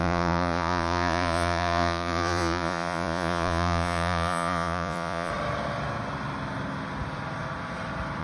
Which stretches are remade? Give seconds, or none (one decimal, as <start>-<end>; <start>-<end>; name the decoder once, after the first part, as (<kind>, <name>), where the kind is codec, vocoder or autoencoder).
0.0-5.3 (vocoder, Vocos)